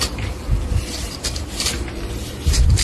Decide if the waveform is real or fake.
fake